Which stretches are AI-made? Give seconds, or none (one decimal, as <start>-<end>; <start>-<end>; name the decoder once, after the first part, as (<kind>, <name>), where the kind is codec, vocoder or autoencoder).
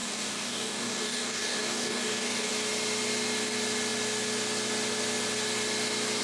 0.0-2.5 (codec, DAC)